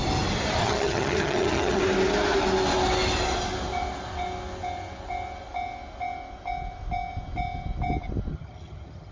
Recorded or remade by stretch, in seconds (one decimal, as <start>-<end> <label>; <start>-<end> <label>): 0.0-0.6 recorded; 0.6-1.8 remade; 1.8-8.3 recorded; 8.3-9.1 remade